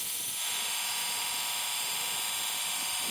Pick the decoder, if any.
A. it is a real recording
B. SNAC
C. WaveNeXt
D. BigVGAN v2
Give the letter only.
A